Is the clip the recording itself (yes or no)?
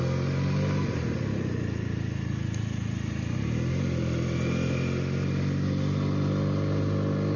yes